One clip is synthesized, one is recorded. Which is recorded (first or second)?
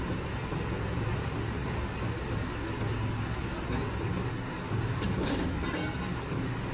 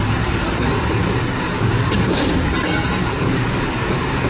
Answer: first